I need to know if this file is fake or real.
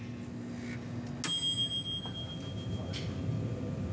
real